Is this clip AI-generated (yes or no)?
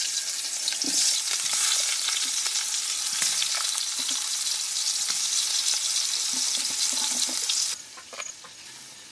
no